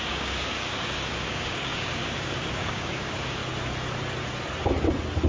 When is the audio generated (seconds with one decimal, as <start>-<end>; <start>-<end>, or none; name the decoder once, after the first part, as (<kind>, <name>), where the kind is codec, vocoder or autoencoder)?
0.0-3.4 (codec, DAC)